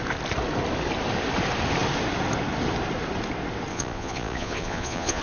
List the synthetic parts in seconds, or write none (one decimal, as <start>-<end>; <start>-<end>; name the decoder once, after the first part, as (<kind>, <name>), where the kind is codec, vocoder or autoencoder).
3.7-5.2 (vocoder, Vocos)